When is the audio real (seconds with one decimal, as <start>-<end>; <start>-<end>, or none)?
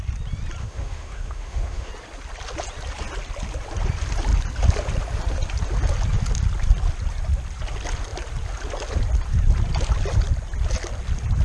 0.0-0.6; 1.9-11.4